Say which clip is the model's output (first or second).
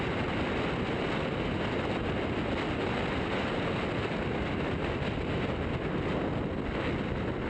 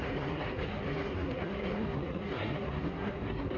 second